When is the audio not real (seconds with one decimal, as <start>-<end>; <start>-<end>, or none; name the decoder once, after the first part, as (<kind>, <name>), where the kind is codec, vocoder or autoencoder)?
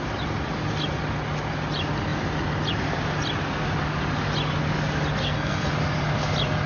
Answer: 5.2-5.7 (codec, SNAC)